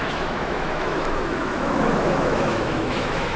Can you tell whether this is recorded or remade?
remade